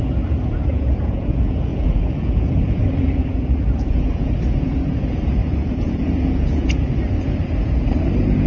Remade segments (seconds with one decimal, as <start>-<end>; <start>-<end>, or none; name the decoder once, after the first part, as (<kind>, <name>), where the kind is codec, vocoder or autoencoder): 0.0-8.5 (vocoder, Vocos)